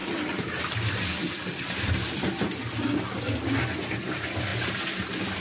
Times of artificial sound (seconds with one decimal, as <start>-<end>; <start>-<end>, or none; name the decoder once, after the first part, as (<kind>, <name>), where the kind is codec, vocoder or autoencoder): 0.0-0.6 (vocoder, BigVGAN v2); 1.2-2.4